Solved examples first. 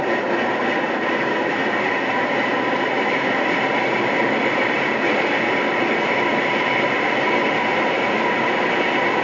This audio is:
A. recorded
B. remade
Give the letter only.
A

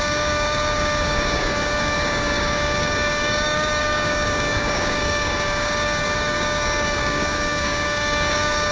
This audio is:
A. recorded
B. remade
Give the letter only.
B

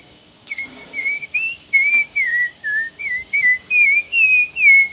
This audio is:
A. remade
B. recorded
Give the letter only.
A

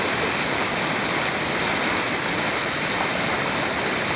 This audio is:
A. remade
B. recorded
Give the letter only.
B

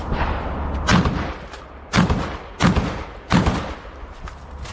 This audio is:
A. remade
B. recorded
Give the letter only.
B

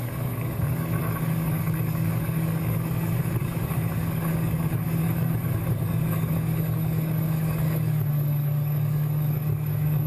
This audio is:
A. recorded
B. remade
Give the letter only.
B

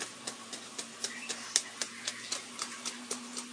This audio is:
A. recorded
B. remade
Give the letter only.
A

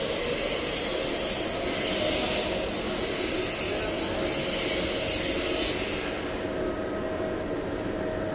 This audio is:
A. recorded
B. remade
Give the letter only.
A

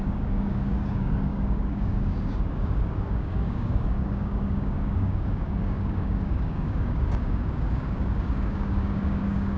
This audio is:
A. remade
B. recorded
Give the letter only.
A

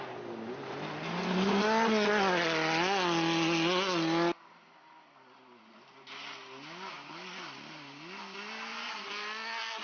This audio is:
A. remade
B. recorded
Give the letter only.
B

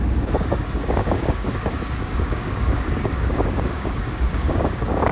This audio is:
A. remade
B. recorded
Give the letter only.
A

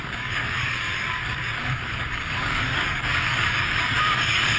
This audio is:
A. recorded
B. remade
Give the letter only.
B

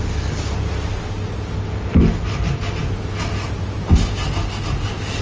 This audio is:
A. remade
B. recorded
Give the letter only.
B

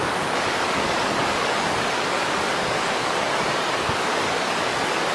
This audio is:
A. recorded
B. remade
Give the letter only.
B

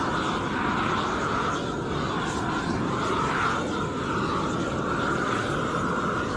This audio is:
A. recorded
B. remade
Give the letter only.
A